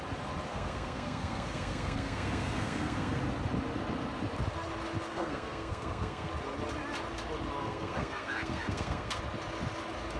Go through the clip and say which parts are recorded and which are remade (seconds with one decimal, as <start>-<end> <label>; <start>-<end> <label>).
0.0-0.5 recorded; 0.5-3.2 remade; 3.2-5.1 recorded; 5.1-6.3 remade; 6.3-7.6 recorded; 7.6-9.2 remade; 9.2-10.2 recorded